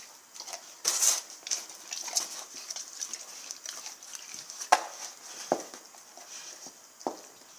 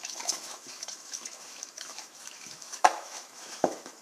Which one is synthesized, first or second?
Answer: second